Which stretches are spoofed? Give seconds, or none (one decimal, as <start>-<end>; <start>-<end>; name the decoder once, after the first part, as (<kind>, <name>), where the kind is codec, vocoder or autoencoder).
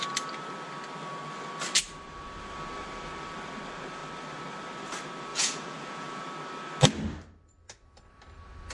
5.3-6.3 (vocoder, Vocos)